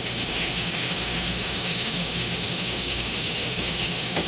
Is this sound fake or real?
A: fake